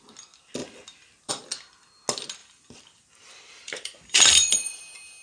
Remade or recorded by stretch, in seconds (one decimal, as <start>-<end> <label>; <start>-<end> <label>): 0.0-2.4 recorded; 2.4-4.8 remade; 4.8-5.2 recorded